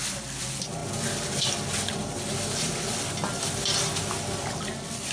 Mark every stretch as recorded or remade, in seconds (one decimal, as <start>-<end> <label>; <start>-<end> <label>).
0.0-5.1 recorded